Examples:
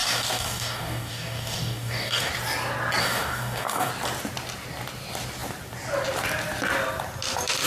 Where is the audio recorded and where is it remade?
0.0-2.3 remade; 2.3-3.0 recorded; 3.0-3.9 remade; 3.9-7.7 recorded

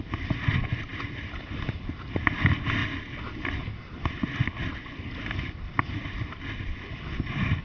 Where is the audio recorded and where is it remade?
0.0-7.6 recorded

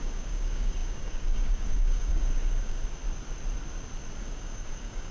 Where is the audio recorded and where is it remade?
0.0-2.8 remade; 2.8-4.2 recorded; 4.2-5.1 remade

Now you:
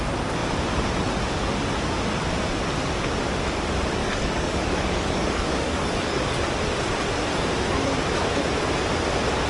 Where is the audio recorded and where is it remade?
0.0-4.0 recorded; 4.0-6.4 remade; 6.4-9.5 recorded